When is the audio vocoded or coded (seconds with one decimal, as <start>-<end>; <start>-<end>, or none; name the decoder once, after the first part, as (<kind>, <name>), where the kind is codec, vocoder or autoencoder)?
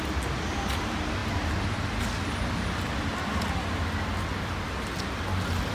none